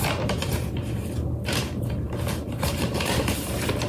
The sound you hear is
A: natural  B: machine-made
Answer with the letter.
B